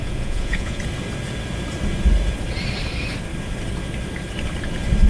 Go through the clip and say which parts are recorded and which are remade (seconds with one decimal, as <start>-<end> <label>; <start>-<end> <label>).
0.0-0.8 remade; 0.8-5.1 recorded